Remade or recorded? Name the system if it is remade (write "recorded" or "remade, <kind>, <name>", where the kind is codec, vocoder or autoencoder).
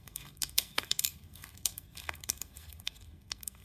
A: remade, codec, SNAC